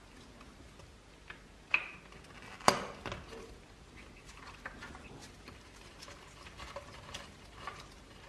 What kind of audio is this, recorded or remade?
recorded